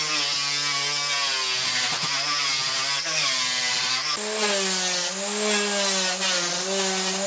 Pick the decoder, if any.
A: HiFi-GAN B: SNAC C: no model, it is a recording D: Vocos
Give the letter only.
C